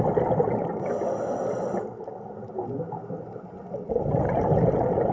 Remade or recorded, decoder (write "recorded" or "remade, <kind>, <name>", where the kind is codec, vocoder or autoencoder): recorded